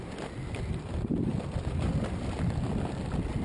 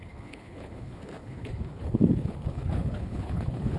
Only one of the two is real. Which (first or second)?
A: first